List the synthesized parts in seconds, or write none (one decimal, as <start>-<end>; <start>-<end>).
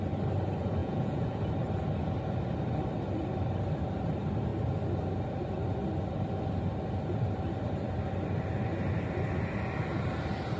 0.8-1.4